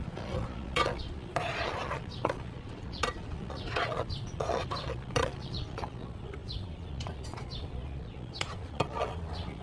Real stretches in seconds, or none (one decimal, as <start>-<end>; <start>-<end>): none